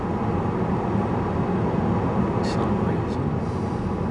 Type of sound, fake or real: real